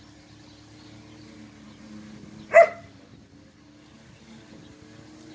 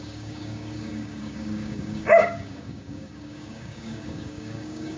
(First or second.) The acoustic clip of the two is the first